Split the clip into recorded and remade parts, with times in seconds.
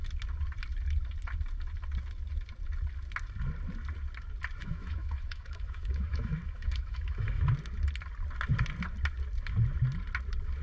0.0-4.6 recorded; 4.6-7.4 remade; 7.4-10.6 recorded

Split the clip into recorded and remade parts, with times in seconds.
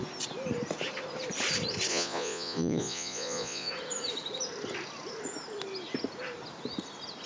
0.0-1.9 recorded; 1.9-3.7 remade; 3.7-7.3 recorded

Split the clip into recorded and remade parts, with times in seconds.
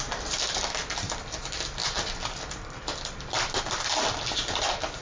0.0-5.0 recorded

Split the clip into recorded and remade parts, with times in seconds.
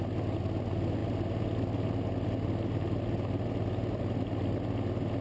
0.0-5.2 recorded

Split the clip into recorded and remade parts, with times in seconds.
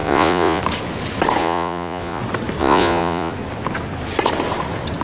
0.0-0.6 remade; 0.6-1.4 recorded; 1.4-2.2 remade; 2.2-2.6 recorded; 2.6-3.3 remade; 3.3-5.0 recorded